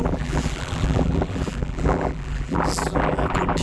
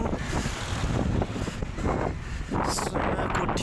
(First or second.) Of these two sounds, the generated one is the first